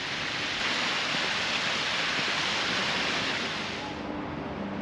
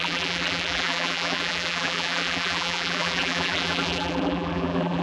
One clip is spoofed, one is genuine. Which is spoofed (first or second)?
second